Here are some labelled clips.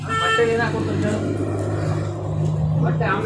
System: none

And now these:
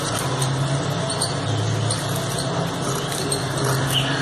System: none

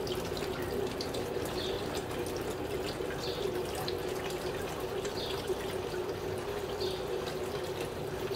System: none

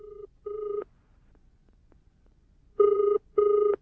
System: vocoder, Vocos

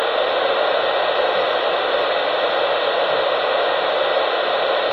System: none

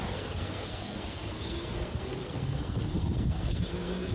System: codec, SNAC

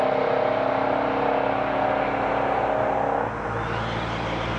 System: none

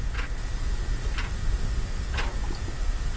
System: vocoder, BigVGAN v2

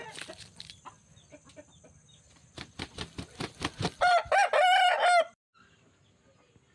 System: none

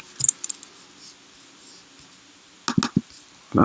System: none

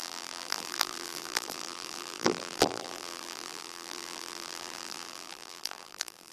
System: vocoder, BigVGAN v2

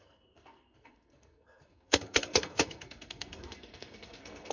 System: codec, SNAC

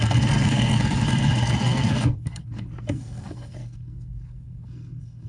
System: codec, SNAC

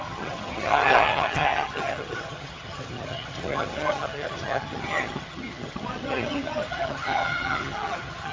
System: vocoder, HiFi-GAN